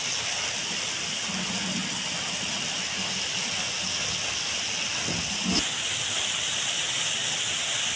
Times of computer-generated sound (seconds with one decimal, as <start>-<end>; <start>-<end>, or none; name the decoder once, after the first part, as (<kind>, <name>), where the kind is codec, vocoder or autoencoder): none